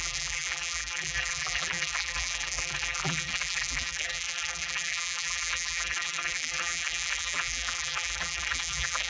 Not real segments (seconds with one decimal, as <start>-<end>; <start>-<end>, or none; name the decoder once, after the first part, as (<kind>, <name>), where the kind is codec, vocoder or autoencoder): 0.0-9.1 (vocoder, BigVGAN v2)